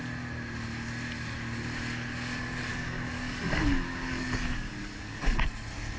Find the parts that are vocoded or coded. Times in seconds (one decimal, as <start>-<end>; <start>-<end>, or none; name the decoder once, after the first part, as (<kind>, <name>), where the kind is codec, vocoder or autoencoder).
2.7-5.4 (codec, DAC)